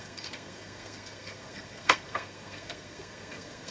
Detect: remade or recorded remade